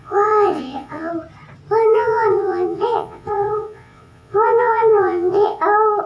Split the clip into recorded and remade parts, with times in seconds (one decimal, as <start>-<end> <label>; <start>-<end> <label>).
0.0-1.1 remade; 1.1-1.9 recorded; 1.9-5.6 remade; 5.6-6.1 recorded

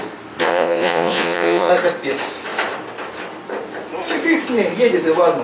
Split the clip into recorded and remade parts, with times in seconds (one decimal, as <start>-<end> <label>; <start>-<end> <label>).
0.0-0.4 recorded; 0.4-1.7 remade; 1.7-5.4 recorded

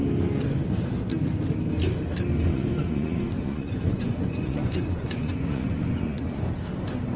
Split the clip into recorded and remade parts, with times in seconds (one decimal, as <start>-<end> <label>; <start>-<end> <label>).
0.0-2.5 recorded; 2.5-6.4 remade; 6.4-7.2 recorded

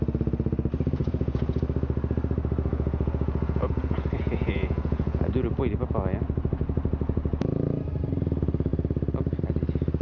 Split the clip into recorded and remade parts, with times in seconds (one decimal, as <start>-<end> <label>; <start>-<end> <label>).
0.0-1.0 recorded; 1.0-1.6 remade; 1.6-2.7 recorded; 2.7-5.2 remade; 5.2-10.0 recorded

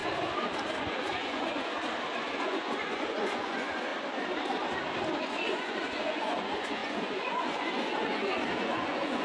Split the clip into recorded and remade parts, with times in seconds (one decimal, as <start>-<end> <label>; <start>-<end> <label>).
0.0-0.8 recorded; 0.8-1.7 remade; 1.7-2.4 recorded; 2.4-3.9 remade; 3.9-5.2 recorded; 5.2-9.2 remade

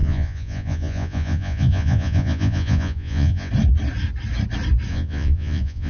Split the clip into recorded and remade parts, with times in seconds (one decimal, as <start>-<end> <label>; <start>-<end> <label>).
0.0-3.5 remade; 3.5-4.9 recorded; 4.9-5.9 remade

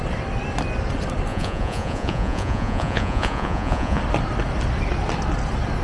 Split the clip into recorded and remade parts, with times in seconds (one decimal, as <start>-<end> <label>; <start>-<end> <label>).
0.0-1.3 recorded; 1.3-4.0 remade; 4.0-5.8 recorded